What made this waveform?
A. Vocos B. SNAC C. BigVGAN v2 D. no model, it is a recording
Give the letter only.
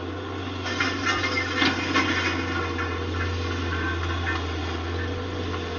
D